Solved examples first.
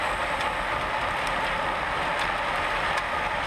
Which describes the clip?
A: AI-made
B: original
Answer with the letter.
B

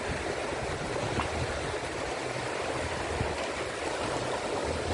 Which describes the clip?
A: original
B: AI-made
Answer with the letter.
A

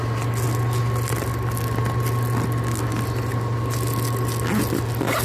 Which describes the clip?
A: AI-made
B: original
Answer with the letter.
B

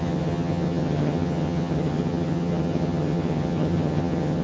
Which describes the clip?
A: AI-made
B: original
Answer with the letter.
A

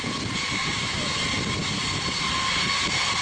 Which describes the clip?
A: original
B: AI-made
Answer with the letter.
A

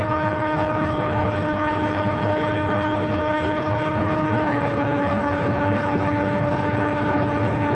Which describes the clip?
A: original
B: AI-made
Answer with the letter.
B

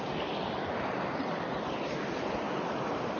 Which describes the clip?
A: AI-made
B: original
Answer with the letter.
B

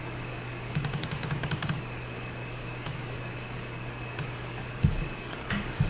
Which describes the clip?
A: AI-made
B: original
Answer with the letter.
A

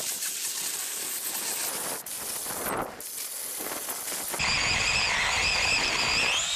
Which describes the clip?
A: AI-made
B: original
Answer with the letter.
B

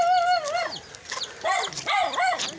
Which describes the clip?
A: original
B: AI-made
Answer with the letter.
A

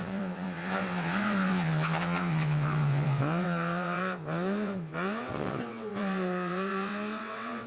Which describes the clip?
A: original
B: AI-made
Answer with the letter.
B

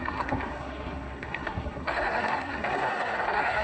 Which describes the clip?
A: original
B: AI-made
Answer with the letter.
B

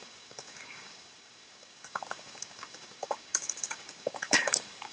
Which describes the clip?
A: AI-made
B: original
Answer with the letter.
A